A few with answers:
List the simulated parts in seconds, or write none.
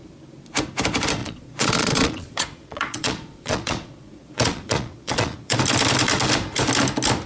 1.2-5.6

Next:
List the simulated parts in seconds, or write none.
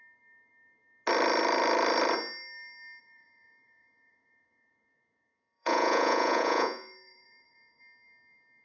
3.0-7.8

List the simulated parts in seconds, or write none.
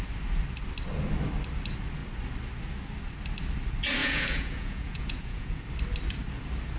4.0-5.6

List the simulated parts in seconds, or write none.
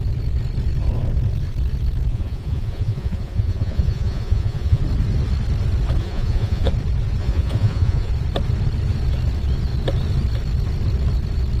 2.1-4.8; 6.0-6.7; 7.2-8.1